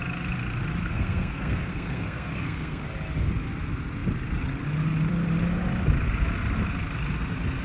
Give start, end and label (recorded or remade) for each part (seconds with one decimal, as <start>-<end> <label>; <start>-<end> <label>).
0.0-0.8 recorded; 0.8-2.8 remade; 2.8-7.6 recorded